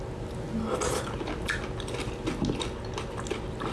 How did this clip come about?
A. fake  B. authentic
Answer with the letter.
B